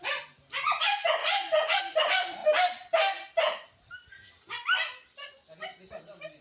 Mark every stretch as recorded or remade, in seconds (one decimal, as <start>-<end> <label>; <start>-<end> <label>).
0.0-1.2 recorded; 1.2-1.8 remade; 1.8-6.4 recorded